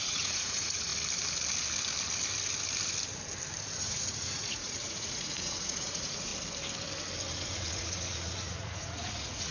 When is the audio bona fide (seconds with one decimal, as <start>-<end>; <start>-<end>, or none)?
0.9-3.8; 6.3-7.3